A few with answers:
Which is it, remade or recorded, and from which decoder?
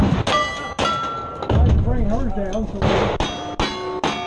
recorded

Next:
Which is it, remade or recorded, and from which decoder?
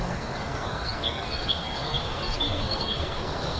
remade, codec, SNAC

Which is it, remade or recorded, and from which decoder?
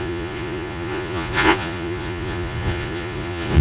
remade, vocoder, Vocos